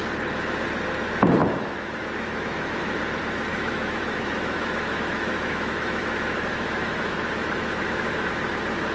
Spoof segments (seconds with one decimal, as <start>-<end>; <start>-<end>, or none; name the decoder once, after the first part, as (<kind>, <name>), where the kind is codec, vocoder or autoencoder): 1.4-3.0 (autoencoder, DAC-VAE); 3.5-8.3